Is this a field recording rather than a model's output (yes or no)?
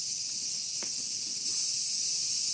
yes